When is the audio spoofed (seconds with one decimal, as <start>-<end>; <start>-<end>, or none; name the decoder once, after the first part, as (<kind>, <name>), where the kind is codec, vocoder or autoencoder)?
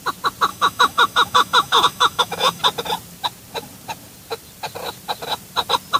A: 0.5-2.6 (autoencoder, DAC-VAE)